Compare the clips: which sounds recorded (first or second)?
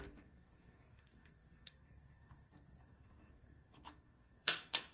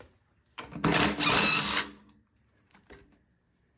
second